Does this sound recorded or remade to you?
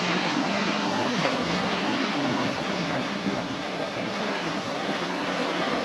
remade